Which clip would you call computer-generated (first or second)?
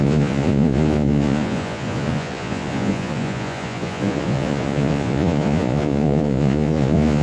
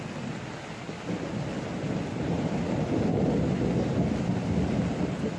first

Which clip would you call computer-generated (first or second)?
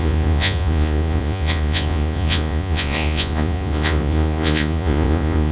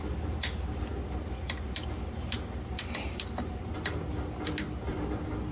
first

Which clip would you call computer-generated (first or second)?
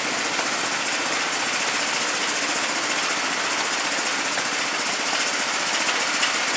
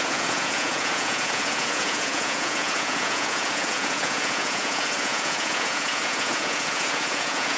second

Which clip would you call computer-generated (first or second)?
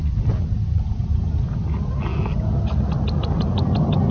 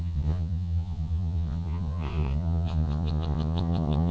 second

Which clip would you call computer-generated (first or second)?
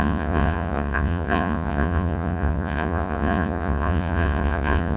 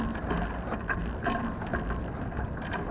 first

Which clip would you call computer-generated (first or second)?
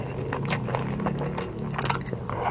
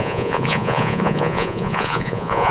second